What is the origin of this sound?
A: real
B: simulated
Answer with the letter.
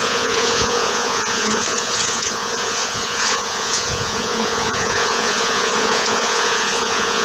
B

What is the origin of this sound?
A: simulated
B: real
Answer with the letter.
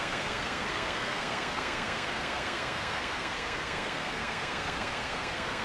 A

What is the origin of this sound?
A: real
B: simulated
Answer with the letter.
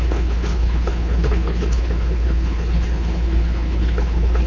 B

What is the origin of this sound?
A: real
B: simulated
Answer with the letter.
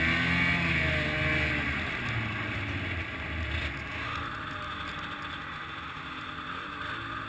A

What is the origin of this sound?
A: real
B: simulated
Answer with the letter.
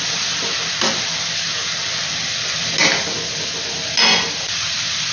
A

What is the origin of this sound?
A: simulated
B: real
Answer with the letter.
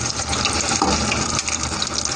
B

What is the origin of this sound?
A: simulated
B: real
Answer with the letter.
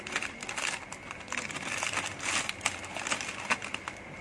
B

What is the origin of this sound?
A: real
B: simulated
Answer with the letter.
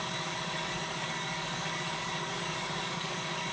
B